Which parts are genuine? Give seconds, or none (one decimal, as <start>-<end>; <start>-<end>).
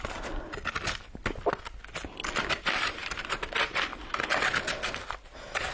1.2-2.4; 3.0-3.7; 4.3-4.9